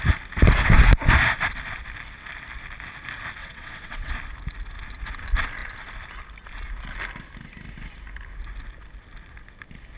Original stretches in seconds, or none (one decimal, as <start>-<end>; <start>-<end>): 0.0-3.4; 4.1-10.0